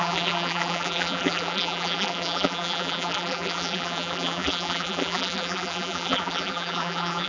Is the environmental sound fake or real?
fake